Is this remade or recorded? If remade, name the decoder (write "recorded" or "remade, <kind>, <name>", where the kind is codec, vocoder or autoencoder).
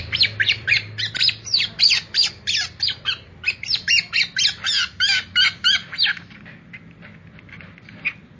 recorded